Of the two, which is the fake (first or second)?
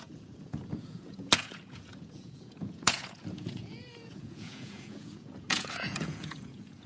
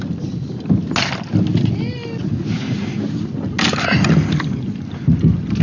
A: first